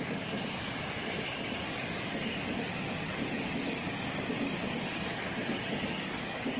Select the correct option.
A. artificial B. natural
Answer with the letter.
A